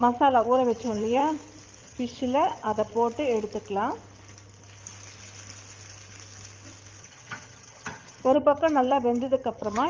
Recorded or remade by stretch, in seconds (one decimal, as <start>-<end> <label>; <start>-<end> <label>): 0.0-1.2 remade; 1.2-1.8 recorded; 1.8-2.9 remade; 2.9-7.0 recorded; 7.0-9.9 remade